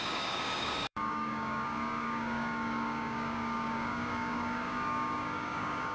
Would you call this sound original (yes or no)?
no